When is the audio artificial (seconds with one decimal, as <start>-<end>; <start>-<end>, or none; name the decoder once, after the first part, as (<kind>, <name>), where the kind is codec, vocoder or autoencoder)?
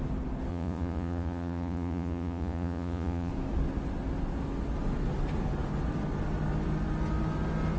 0.5-3.3 (vocoder, Vocos)